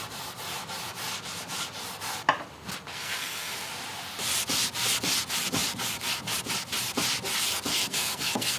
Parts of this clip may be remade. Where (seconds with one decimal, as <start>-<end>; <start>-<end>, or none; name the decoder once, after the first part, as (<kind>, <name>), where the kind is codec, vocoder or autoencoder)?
2.9-3.7 (codec, SNAC); 7.7-8.6